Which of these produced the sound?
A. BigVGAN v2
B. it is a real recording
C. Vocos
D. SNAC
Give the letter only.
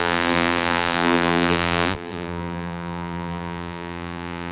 A